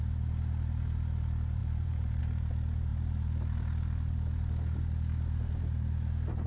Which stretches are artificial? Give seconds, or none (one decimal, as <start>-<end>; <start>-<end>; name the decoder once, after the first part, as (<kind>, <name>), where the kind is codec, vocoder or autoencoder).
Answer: 1.6-2.2 (vocoder, BigVGAN v2)